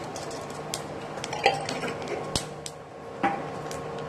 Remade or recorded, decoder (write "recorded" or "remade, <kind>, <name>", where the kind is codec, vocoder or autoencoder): recorded